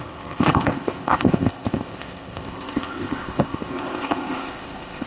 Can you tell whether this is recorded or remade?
remade